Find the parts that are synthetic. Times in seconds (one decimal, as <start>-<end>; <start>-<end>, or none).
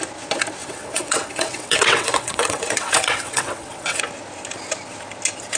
0.6-4.0